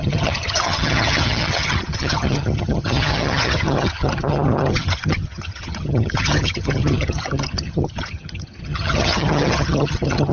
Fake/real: fake